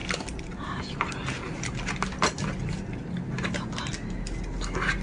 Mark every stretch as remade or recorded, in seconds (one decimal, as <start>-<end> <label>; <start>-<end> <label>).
0.0-5.0 recorded